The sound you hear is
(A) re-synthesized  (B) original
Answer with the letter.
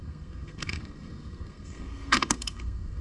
A